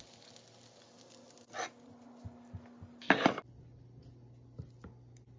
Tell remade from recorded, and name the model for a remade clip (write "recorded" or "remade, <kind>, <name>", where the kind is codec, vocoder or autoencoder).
recorded